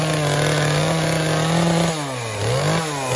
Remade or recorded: recorded